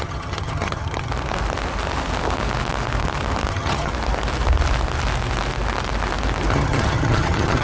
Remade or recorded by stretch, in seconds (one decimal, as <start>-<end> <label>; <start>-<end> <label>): 0.0-1.1 remade; 1.1-3.5 recorded; 3.5-3.9 remade; 3.9-6.5 recorded; 6.5-7.6 remade